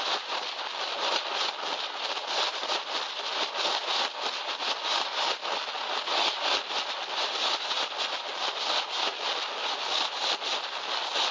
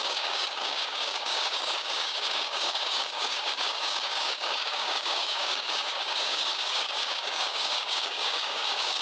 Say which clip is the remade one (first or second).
second